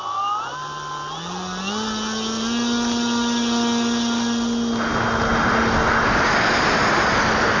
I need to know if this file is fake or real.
real